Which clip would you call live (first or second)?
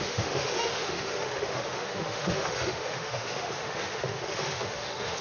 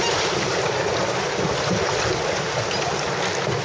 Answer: second